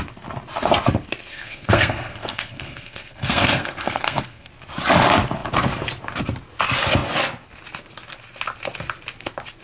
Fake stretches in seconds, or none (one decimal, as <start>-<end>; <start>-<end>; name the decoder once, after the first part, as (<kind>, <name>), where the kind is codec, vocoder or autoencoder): 1.3-4.5 (codec, SNAC)